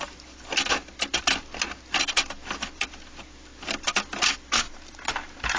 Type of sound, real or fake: real